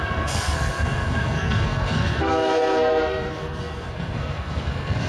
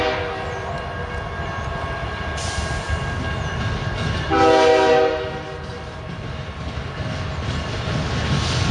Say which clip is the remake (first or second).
first